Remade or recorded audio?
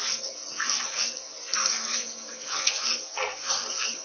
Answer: remade